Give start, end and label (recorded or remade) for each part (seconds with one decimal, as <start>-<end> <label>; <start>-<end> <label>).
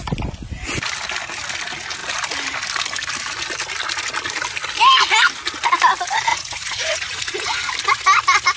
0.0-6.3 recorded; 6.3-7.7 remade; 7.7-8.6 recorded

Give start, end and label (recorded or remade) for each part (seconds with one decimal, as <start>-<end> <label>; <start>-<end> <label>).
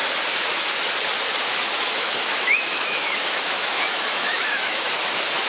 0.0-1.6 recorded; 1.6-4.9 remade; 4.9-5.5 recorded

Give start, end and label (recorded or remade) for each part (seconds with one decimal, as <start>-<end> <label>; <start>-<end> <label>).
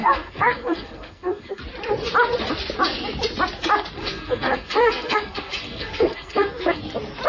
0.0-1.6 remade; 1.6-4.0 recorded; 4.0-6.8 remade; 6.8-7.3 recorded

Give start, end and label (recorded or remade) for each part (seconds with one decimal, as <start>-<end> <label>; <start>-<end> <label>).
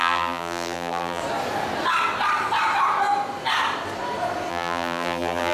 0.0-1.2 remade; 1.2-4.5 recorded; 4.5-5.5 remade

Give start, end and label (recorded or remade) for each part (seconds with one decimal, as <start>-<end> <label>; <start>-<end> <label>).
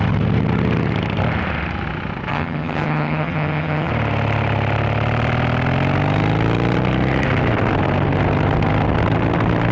0.0-2.3 recorded; 2.3-3.9 remade; 3.9-9.7 recorded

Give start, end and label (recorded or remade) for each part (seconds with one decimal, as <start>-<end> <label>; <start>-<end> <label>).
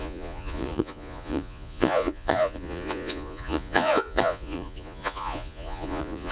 0.0-6.3 remade